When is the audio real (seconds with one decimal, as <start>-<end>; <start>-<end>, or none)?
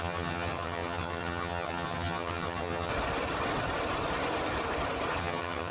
2.9-5.2